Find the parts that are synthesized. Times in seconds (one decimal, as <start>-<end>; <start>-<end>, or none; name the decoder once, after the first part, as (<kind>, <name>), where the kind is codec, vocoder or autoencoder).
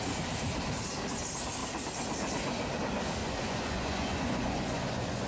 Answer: 3.2-5.3 (vocoder, Vocos)